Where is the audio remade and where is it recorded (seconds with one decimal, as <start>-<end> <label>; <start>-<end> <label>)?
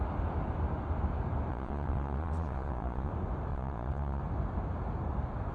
0.0-1.5 recorded; 1.5-3.1 remade; 3.1-3.5 recorded; 3.5-4.2 remade; 4.2-5.5 recorded